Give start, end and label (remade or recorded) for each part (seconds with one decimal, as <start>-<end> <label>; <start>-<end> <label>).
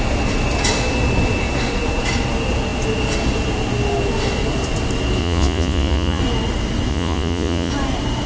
0.0-5.2 recorded; 5.2-6.2 remade; 6.2-6.9 recorded; 6.9-7.7 remade; 7.7-8.3 recorded